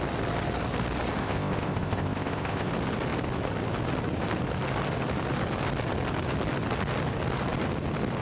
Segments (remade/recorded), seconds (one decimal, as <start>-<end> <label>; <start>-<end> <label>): 0.0-1.2 recorded; 1.2-2.7 remade; 2.7-8.2 recorded